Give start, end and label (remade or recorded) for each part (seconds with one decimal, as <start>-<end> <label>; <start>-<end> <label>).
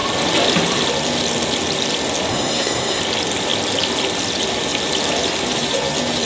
0.0-2.3 recorded; 2.3-3.0 remade; 3.0-6.3 recorded